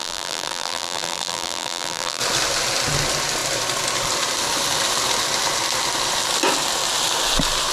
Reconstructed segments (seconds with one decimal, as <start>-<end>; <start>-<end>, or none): 0.0-2.2